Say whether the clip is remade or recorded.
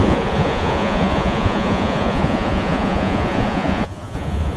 remade